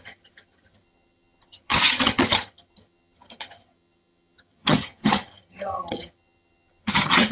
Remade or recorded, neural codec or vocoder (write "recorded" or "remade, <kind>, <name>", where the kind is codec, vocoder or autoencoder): remade, vocoder, HiFi-GAN